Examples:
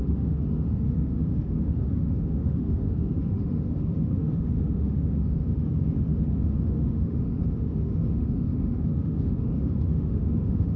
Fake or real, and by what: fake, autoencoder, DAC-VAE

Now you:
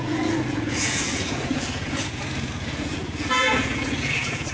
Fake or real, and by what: fake, vocoder, Vocos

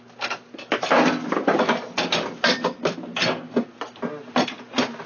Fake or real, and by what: real